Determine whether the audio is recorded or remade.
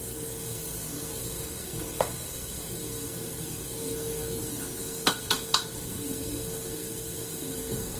remade